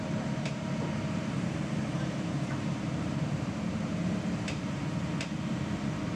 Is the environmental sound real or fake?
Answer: fake